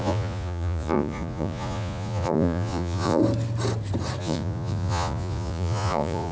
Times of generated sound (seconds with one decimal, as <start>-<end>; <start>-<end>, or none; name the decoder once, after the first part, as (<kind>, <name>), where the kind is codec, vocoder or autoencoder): 0.0-3.2 (vocoder, Vocos); 4.2-6.3